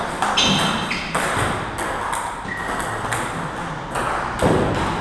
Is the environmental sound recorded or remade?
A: recorded